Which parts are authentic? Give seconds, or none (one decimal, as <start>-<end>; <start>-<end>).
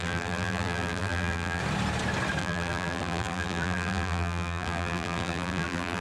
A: 1.6-2.4